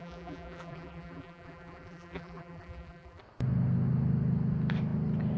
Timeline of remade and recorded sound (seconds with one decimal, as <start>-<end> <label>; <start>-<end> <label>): 0.0-3.2 remade; 3.2-5.4 recorded